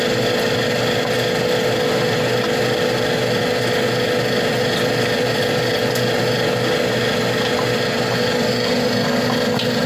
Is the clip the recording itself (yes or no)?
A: yes